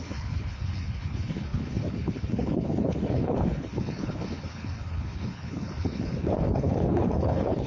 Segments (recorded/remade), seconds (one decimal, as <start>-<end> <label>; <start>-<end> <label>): 0.0-7.7 remade